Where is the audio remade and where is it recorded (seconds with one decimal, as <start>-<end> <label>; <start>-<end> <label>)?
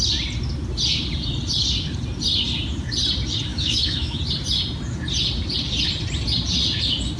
0.0-3.5 recorded; 3.5-4.2 remade; 4.2-7.2 recorded